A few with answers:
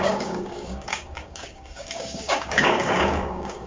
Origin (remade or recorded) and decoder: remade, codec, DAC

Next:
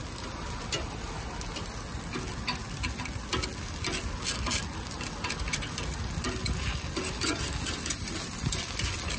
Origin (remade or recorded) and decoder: recorded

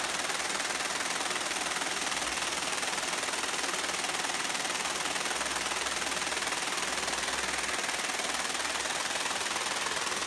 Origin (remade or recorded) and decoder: recorded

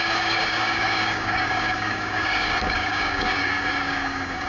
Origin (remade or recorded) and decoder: remade, codec, DAC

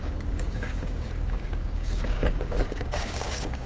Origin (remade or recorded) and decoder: remade, codec, DAC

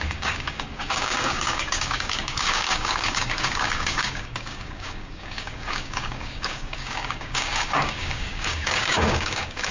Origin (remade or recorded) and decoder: remade, codec, DAC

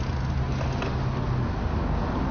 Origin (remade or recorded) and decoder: recorded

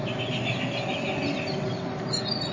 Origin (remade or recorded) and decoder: recorded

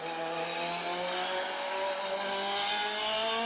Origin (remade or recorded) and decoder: recorded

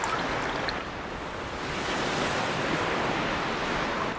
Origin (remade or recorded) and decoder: recorded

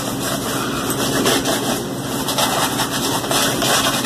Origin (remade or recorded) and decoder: recorded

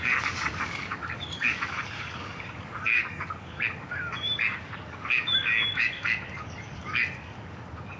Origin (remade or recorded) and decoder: remade, codec, DAC